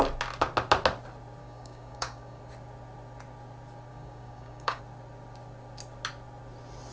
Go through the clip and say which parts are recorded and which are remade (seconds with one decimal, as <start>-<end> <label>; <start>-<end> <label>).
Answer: 0.0-1.4 recorded; 1.4-2.4 remade; 2.4-3.9 recorded; 3.9-4.8 remade; 4.8-6.9 recorded